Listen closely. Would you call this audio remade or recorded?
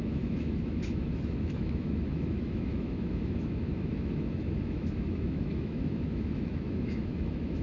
remade